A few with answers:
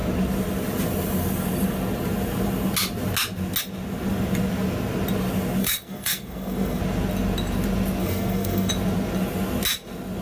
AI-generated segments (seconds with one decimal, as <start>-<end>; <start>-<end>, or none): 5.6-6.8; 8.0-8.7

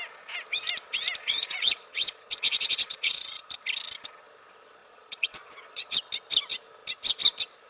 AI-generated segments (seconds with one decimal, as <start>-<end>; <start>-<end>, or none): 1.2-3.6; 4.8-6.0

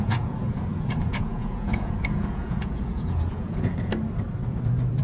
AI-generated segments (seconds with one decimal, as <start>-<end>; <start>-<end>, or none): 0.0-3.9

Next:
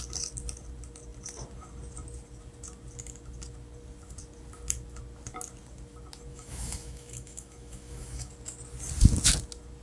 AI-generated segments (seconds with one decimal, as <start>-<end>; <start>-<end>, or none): 6.3-8.3